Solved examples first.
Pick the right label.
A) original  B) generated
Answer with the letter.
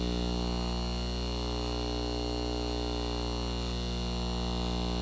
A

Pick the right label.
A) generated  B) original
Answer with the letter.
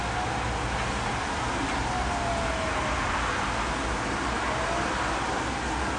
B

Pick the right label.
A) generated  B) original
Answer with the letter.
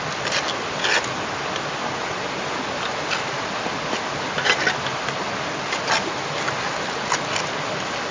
B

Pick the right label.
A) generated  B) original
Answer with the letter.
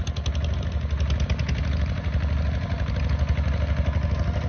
B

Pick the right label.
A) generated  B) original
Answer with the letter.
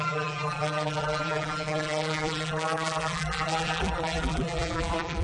A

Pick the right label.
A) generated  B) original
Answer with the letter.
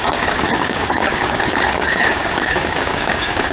A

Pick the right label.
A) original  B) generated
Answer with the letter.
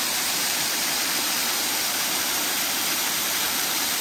B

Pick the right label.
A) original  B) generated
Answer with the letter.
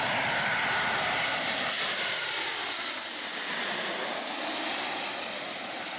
A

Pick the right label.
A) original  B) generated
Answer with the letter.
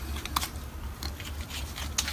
A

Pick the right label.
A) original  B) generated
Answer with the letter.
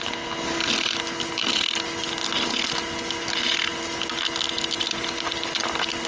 A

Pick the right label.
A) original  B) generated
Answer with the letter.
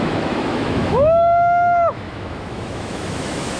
B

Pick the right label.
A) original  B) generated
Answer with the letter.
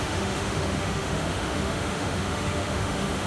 B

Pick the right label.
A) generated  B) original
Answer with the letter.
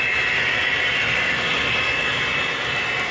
B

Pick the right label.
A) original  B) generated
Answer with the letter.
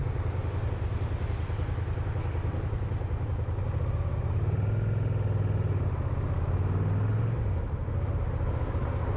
A